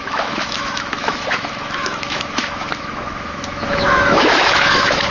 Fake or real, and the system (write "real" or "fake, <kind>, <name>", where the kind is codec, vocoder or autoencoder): fake, autoencoder, DAC-VAE